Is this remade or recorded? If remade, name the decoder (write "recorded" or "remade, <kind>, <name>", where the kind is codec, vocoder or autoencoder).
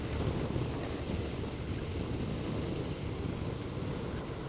recorded